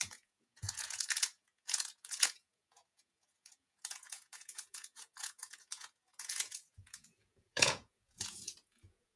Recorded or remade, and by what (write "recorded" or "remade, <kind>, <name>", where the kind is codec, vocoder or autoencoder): remade, vocoder, Vocos